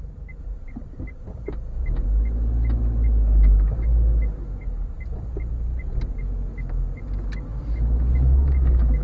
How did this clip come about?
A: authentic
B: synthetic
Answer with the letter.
A